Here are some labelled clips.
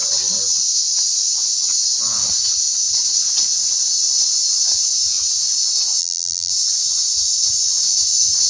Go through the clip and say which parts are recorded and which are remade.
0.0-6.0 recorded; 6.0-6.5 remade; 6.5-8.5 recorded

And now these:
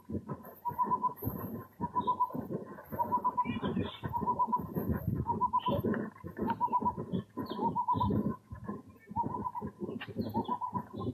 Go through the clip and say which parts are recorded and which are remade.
0.0-11.1 recorded

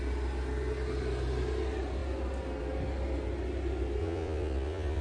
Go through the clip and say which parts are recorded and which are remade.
0.0-4.0 recorded; 4.0-5.0 remade

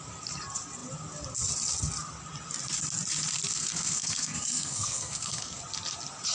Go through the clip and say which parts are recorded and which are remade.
0.0-3.5 recorded; 3.5-5.6 remade; 5.6-6.3 recorded

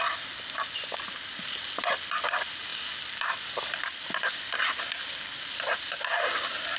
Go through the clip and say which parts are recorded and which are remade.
0.0-6.8 recorded